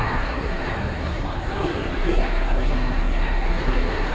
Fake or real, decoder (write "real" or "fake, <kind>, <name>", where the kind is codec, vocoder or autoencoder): fake, codec, SNAC